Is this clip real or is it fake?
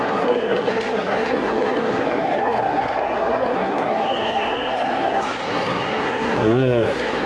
fake